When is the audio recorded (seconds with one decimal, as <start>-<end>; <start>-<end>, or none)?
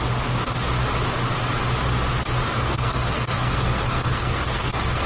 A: 0.0-2.5